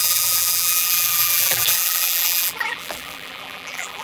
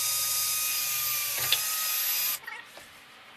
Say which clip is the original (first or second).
second